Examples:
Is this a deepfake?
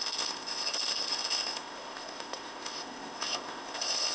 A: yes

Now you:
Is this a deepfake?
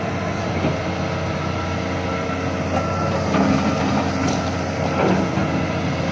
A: no